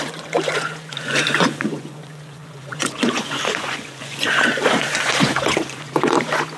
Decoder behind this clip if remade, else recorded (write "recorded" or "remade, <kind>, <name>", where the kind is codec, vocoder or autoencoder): remade, vocoder, Vocos